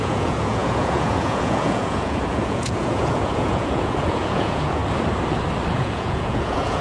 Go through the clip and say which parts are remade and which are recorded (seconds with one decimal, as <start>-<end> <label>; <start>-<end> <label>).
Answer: 0.0-4.8 remade; 4.8-5.7 recorded; 5.7-6.8 remade